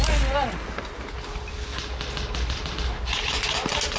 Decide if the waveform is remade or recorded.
recorded